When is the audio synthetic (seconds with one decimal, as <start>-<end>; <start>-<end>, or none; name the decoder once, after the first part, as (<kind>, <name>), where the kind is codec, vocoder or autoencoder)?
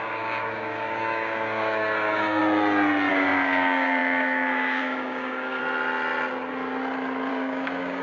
0.0-2.4 (codec, DAC); 3.1-5.6; 7.3-8.0